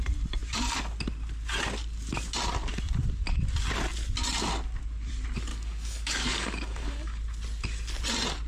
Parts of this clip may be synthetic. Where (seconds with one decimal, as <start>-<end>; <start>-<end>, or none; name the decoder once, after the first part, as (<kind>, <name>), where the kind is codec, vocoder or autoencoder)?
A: 5.5-7.2 (codec, DAC)